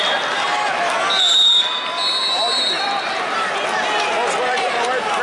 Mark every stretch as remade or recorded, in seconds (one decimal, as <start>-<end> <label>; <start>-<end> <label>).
0.0-5.2 recorded